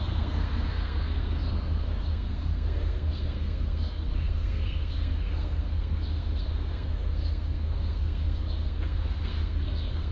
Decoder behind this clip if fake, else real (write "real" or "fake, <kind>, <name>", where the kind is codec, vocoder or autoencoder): fake, codec, SNAC